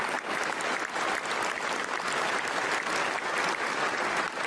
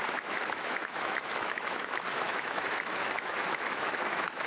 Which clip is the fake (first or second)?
second